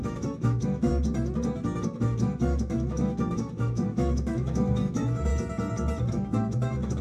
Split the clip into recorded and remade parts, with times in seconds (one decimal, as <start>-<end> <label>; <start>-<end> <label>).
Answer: 0.0-0.9 remade; 0.9-2.0 recorded; 2.0-5.3 remade; 5.3-6.1 recorded; 6.1-7.0 remade